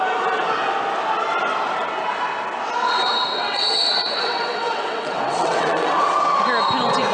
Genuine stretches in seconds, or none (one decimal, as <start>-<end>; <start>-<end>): 0.0-2.8; 6.4-7.1